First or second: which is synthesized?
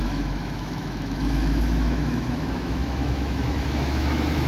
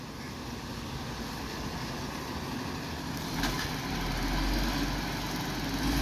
first